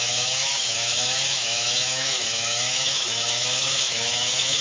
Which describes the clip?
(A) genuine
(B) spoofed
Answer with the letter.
B